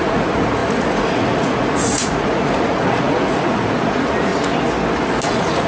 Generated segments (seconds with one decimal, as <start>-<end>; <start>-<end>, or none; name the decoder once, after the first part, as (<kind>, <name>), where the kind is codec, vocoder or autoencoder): 0.0-4.3 (vocoder, Vocos); 5.3-5.7